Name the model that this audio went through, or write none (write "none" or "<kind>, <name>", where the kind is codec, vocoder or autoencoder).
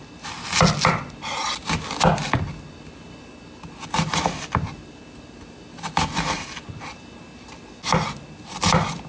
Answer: none